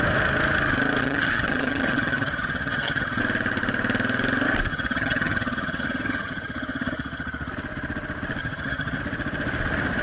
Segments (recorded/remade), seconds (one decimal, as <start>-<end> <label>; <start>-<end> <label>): 0.0-1.0 recorded; 1.0-3.2 remade; 3.2-4.7 recorded; 4.7-7.5 remade; 7.5-8.4 recorded; 8.4-9.0 remade; 9.0-10.0 recorded